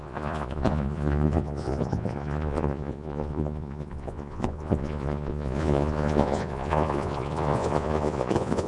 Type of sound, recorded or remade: remade